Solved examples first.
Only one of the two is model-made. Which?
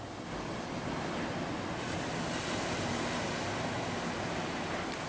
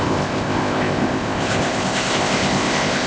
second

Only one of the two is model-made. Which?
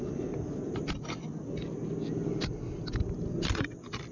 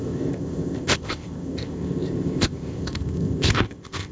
second